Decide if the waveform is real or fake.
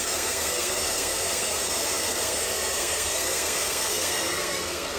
fake